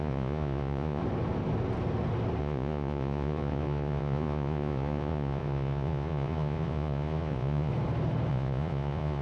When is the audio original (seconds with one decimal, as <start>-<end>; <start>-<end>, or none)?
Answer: 1.0-2.4; 7.7-8.3